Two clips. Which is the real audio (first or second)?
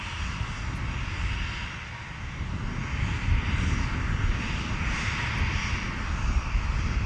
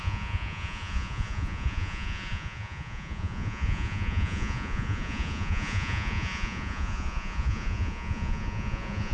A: first